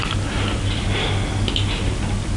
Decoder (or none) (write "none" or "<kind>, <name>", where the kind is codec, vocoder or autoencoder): none